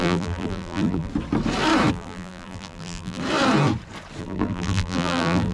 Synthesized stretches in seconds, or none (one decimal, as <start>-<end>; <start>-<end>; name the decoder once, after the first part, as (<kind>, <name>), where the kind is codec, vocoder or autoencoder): 0.0-1.1 (vocoder, BigVGAN v2); 1.9-3.2; 4.2-5.5